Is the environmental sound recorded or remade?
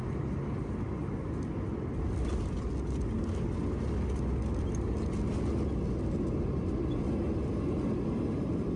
recorded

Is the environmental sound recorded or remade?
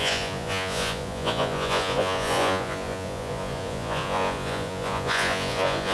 remade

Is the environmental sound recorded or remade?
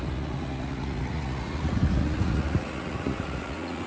remade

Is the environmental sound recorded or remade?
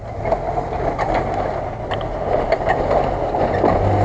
recorded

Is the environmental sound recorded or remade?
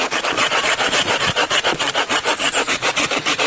remade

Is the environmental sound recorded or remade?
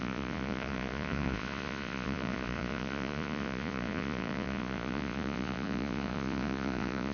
remade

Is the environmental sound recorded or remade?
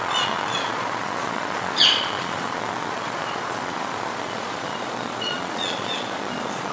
remade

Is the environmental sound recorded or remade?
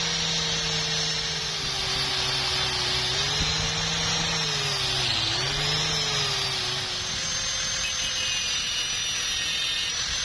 recorded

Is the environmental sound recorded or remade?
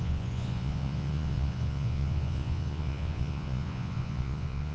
remade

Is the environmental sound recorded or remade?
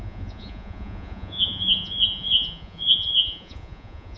remade